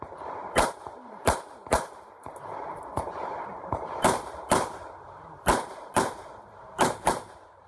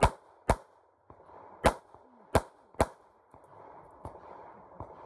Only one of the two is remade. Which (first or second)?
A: first